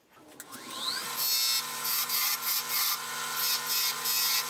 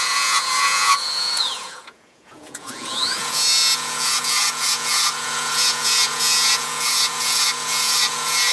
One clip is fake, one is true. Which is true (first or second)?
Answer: first